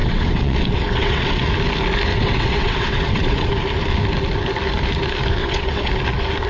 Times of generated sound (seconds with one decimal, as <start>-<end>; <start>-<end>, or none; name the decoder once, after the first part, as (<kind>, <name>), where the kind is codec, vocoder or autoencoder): 0.0-1.5 (vocoder, WaveNeXt); 2.1-3.5; 5.4-5.9